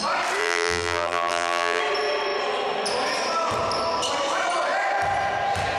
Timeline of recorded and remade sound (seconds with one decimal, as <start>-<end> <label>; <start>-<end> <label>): 0.0-0.4 recorded; 0.4-1.8 remade; 1.8-5.8 recorded